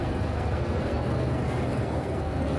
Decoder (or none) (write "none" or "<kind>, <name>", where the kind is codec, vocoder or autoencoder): codec, SNAC